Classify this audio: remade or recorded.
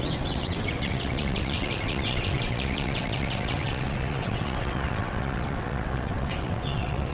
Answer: remade